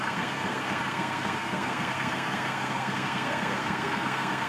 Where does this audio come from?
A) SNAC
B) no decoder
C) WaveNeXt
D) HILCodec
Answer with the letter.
A